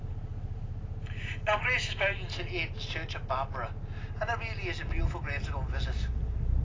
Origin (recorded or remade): recorded